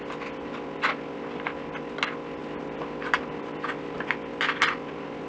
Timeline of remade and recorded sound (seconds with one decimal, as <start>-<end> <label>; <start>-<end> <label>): 0.0-5.3 recorded